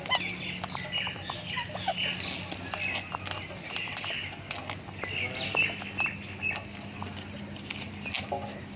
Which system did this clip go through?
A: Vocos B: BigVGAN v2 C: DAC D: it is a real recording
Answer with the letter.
D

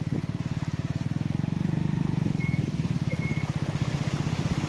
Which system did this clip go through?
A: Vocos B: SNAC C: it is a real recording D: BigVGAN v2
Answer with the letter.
C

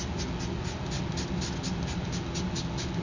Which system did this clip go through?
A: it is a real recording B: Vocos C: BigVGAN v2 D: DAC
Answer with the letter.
A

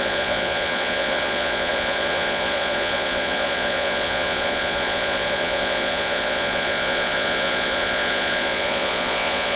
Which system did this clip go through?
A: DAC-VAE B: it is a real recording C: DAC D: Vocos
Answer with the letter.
D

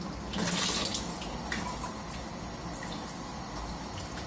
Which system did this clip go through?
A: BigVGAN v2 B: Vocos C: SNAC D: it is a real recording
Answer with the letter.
D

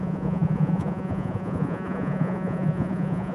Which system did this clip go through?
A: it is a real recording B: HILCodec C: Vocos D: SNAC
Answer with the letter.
C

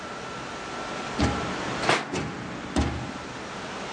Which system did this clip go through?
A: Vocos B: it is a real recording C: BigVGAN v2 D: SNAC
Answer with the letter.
B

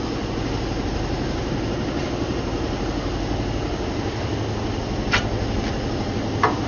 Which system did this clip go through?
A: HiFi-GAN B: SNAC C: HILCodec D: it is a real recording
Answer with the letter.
D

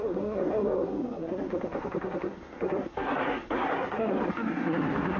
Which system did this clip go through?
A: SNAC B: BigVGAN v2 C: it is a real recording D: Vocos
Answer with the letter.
A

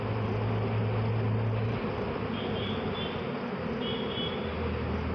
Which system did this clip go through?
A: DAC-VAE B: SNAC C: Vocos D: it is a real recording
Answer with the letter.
D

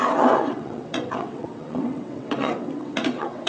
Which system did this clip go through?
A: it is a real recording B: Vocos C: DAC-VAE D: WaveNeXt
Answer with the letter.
D